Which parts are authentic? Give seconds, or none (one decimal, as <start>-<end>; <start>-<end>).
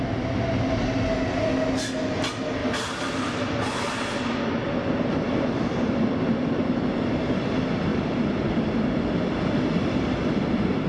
0.0-7.9